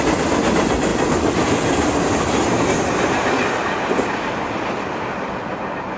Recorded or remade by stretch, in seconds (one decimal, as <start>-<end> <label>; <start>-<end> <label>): 0.0-6.0 recorded